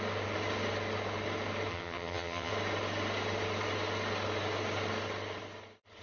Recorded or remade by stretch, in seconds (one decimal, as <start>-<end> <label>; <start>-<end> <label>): 0.0-1.7 recorded; 1.7-2.5 remade; 2.5-6.0 recorded